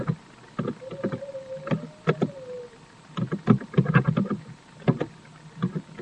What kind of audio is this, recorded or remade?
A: recorded